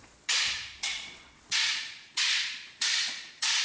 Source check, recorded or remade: remade